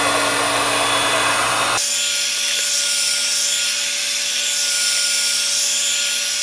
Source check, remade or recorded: recorded